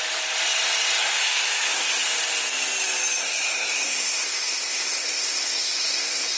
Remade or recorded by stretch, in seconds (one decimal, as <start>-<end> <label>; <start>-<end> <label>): 0.0-1.0 recorded; 1.0-2.0 remade; 2.0-3.2 recorded; 3.2-6.4 remade